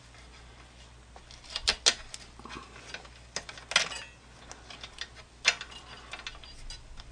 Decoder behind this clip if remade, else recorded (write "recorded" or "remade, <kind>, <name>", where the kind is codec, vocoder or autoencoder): recorded